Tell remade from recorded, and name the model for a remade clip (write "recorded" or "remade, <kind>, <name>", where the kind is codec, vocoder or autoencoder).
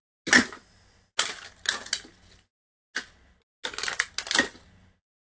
recorded